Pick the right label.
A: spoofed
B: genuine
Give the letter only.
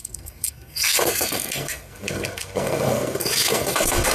A